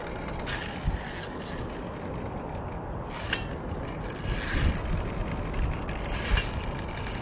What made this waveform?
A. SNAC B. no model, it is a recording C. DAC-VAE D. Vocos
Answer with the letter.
B